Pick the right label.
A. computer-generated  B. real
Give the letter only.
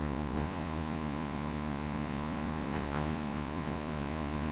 A